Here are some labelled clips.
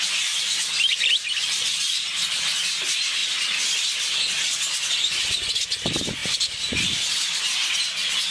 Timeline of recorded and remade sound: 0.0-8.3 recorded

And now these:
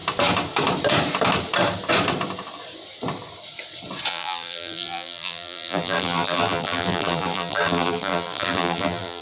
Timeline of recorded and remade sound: 0.0-4.1 recorded; 4.1-9.2 remade

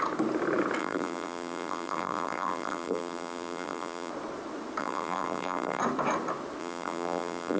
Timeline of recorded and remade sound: 0.0-0.8 recorded; 0.8-4.1 remade; 4.1-4.8 recorded; 4.8-5.8 remade; 5.8-6.6 recorded; 6.6-7.6 remade

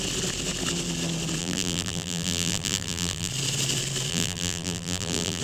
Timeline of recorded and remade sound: 0.0-1.4 recorded; 1.4-3.3 remade; 3.3-4.1 recorded; 4.1-5.4 remade

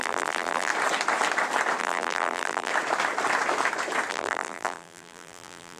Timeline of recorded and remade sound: 0.0-0.7 remade; 0.7-1.8 recorded; 1.8-2.7 remade; 2.7-4.1 recorded; 4.1-5.8 remade

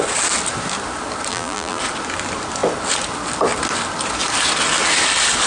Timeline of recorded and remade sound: 0.0-1.3 recorded; 1.3-1.8 remade; 1.8-5.5 recorded

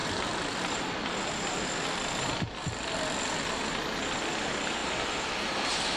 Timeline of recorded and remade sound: 0.0-3.6 remade; 3.6-4.8 recorded; 4.8-5.3 remade; 5.3-6.0 recorded

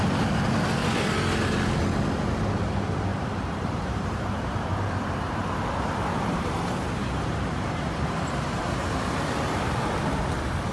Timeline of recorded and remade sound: 0.0-0.8 recorded; 0.8-1.5 remade; 1.5-3.1 recorded; 3.1-6.5 remade; 6.5-7.0 recorded; 7.0-9.1 remade; 9.1-10.7 recorded